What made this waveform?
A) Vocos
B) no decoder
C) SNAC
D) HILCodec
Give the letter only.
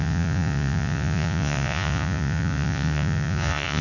A